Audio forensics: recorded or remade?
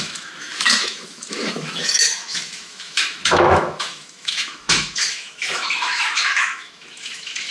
remade